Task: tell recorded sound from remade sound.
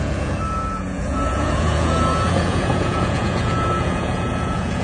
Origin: remade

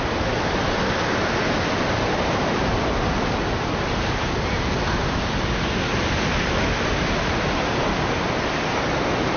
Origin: recorded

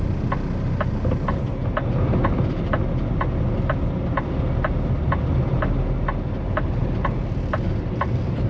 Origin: recorded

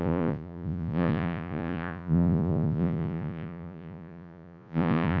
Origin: remade